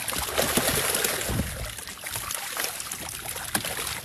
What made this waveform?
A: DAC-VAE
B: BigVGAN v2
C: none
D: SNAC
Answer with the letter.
C